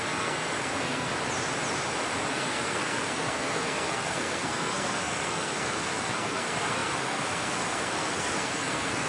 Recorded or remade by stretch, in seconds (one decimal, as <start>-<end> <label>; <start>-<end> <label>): 0.0-1.1 remade; 1.1-2.3 recorded; 2.3-9.1 remade